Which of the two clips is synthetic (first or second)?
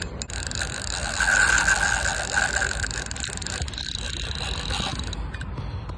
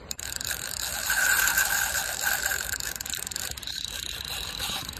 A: second